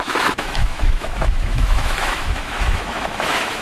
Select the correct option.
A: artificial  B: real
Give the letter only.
A